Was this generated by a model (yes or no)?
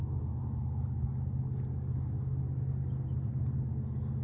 no